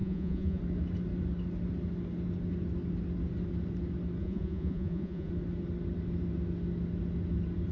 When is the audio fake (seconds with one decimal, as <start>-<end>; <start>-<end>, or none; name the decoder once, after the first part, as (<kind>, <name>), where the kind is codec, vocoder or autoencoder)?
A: 0.0-0.6 (vocoder, Vocos); 4.2-5.3